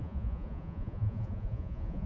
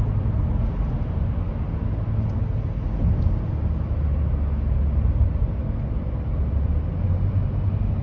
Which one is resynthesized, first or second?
first